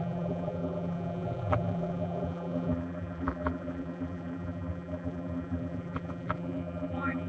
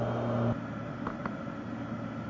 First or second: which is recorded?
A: second